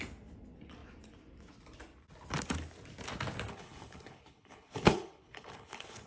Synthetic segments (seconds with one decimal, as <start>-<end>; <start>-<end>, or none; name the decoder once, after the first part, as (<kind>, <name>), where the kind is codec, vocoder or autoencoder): 3.5-6.1 (codec, HILCodec)